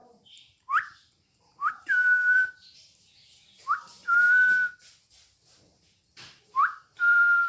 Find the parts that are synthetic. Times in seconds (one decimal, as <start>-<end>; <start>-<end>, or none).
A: 0.0-4.0; 6.4-7.5